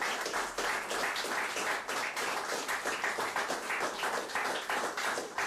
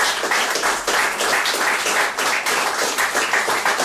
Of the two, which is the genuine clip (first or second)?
first